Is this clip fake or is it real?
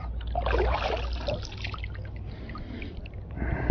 real